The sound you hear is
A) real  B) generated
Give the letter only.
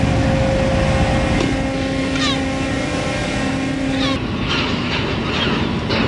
A